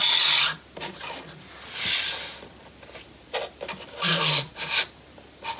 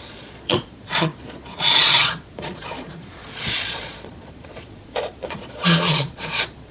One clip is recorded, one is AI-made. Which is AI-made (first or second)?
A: second